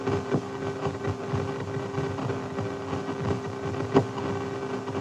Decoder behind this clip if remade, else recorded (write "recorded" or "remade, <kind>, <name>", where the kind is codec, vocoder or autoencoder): recorded